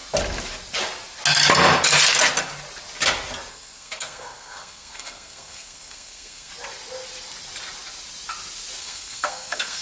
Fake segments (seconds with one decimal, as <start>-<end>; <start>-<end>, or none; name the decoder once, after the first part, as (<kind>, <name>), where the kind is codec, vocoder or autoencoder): 3.5-6.5 (codec, SNAC); 8.8-9.8